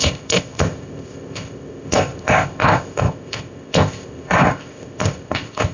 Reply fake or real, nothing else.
fake